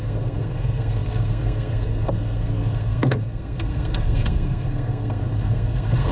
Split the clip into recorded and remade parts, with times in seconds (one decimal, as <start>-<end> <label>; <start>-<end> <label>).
0.0-6.1 remade